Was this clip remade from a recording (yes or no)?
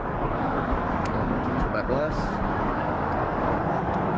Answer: yes